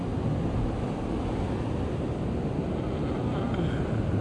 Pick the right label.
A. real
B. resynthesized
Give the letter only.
A